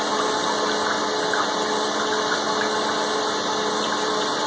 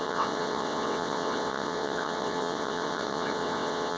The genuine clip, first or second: first